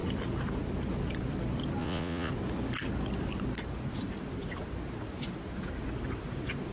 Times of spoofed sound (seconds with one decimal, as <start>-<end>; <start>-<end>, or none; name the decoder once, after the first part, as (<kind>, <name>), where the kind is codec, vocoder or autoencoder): 1.8-2.3 (vocoder, Vocos)